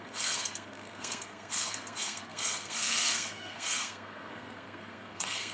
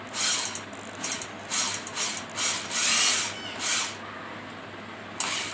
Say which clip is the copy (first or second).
first